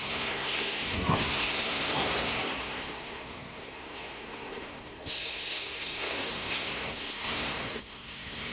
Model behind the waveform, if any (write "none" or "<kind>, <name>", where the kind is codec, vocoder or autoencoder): codec, SNAC